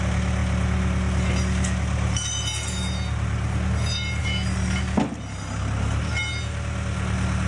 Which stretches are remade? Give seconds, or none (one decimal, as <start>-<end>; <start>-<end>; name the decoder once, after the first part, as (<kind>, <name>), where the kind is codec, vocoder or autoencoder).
4.2-4.8 (codec, DAC)